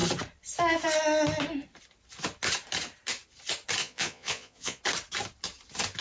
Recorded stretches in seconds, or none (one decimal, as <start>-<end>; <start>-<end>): 0.0-3.8; 4.8-6.0